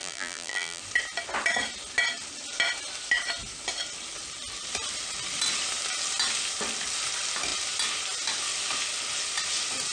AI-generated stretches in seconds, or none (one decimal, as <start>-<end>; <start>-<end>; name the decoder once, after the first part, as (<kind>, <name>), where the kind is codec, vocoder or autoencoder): 0.0-0.8 (vocoder, BigVGAN v2)